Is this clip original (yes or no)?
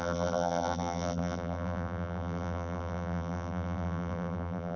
no